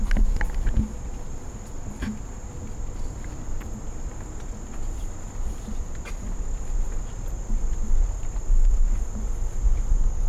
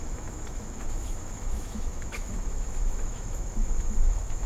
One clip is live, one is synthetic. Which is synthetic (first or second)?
second